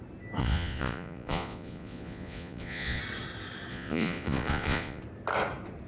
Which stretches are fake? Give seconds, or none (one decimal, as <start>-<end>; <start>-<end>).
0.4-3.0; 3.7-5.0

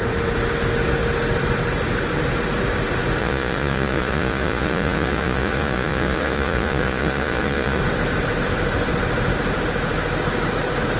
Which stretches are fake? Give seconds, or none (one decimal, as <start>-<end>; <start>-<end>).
3.2-7.8

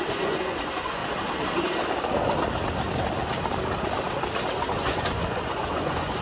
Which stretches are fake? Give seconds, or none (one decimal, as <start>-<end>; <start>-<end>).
0.0-1.0; 4.7-6.2

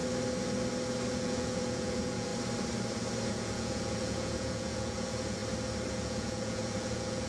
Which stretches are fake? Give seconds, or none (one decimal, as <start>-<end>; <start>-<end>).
1.1-2.3; 3.3-5.4; 5.9-7.3